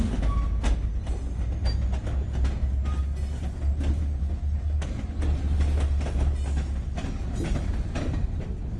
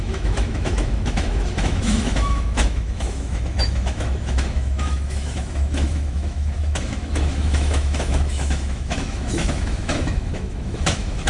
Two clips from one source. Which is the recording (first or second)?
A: first